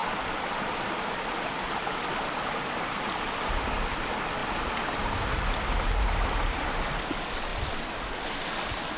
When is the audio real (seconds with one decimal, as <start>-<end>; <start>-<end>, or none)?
0.0-0.7; 4.4-6.1; 7.5-9.0